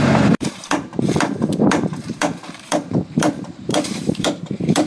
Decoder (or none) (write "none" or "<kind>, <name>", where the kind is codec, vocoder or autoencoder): vocoder, BigVGAN v2